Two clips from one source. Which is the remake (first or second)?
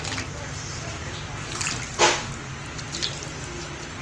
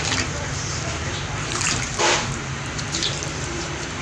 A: second